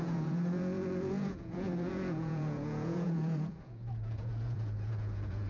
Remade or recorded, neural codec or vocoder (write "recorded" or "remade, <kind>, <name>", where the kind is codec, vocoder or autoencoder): remade, vocoder, Vocos